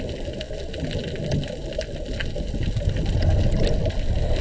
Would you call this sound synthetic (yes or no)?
no